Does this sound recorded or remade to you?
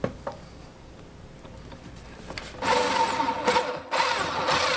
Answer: recorded